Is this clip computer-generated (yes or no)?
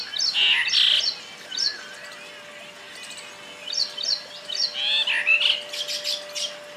no